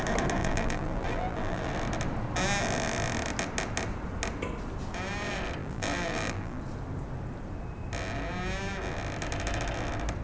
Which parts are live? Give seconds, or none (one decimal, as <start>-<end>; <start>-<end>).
0.0-0.4; 1.7-5.6; 6.6-10.2